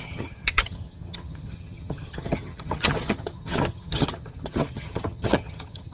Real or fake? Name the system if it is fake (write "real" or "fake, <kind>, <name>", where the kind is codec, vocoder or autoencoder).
fake, vocoder, HiFi-GAN